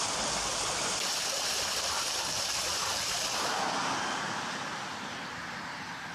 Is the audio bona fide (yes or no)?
yes